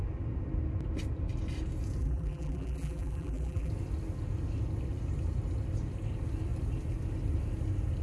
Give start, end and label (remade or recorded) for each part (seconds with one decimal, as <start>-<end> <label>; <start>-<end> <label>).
0.0-2.0 recorded; 2.0-3.7 remade; 3.7-8.0 recorded